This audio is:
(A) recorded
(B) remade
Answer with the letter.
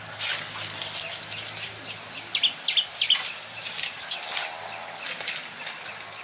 A